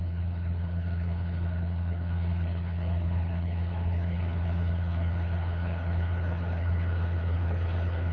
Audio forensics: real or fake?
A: fake